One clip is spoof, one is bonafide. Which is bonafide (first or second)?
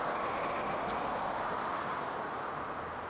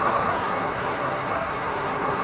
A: first